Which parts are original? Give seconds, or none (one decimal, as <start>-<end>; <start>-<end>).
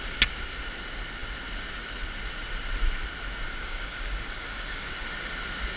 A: 0.0-3.5; 5.0-5.8